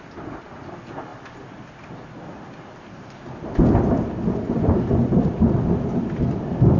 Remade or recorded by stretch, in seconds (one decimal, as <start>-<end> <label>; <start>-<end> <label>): 0.0-6.8 recorded